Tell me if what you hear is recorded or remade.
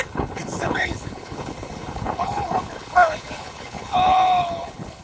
remade